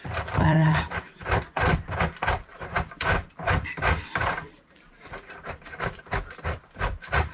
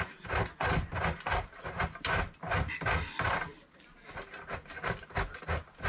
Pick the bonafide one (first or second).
second